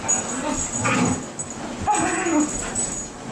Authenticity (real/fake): real